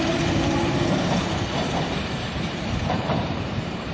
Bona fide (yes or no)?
no